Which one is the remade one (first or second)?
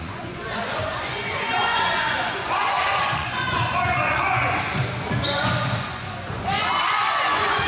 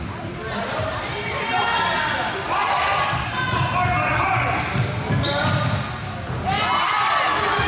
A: first